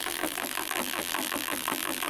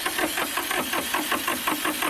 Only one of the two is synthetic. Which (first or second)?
first